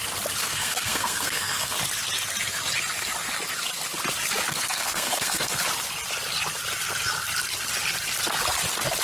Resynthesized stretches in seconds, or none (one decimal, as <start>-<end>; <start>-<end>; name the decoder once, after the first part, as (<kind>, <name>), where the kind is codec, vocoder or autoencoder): 0.4-1.8 (codec, SNAC); 4.5-5.6